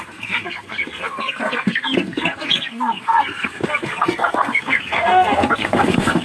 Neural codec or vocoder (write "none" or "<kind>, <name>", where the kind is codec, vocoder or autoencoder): codec, SNAC